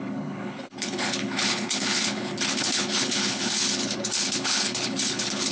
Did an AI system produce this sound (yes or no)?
yes